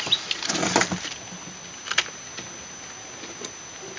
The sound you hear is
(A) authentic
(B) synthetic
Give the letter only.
A